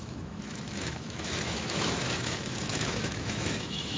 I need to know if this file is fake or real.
fake